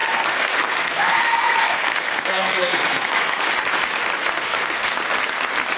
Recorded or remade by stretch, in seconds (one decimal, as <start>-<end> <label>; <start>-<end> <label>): 0.0-3.5 remade; 3.5-4.4 recorded; 4.4-4.9 remade; 4.9-5.8 recorded